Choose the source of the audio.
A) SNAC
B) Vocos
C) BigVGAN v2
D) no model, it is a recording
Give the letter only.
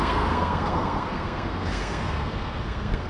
A